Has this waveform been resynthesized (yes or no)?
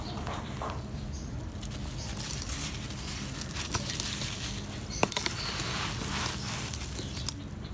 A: no